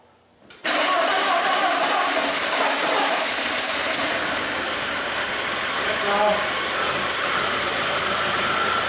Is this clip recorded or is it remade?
recorded